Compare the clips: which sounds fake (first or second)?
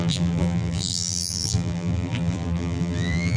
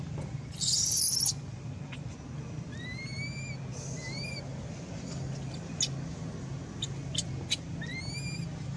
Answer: first